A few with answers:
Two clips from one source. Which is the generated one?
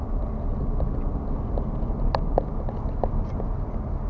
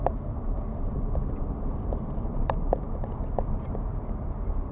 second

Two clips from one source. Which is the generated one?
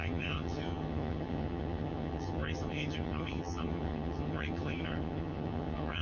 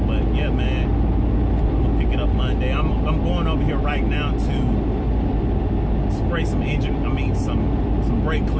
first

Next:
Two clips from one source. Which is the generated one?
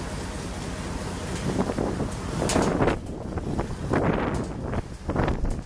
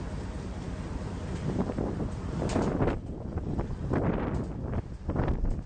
second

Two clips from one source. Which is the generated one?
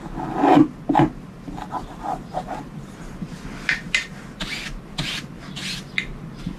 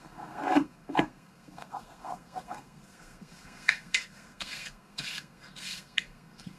second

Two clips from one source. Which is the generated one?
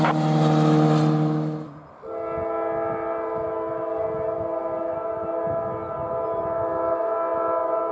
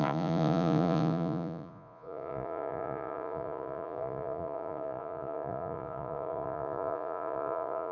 second